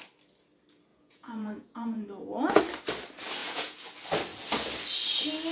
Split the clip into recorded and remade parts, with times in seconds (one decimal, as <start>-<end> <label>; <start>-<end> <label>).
0.0-0.9 recorded; 0.9-2.6 remade; 2.6-3.4 recorded; 3.4-3.9 remade; 3.9-5.5 recorded